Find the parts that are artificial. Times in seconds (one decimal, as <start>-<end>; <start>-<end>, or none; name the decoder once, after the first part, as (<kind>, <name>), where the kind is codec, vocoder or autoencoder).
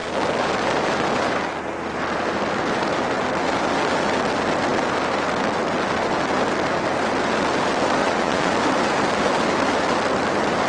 8.0-8.5 (vocoder, Vocos)